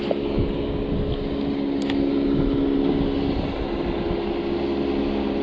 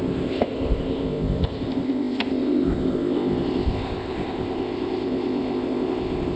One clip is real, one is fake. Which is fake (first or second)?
second